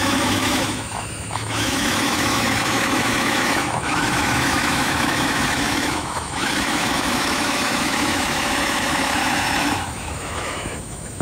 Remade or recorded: remade